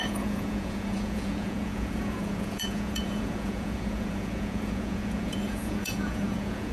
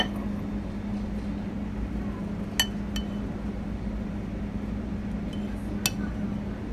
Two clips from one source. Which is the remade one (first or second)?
first